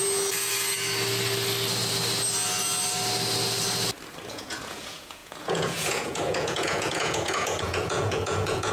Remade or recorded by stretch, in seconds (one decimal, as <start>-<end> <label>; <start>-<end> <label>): 0.0-4.3 recorded; 4.3-8.7 remade